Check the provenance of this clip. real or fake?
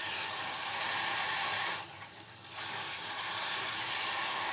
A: real